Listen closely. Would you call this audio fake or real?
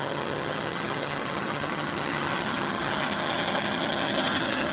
fake